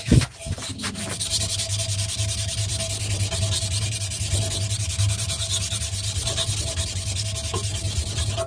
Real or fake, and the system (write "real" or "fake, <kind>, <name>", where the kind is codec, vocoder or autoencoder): real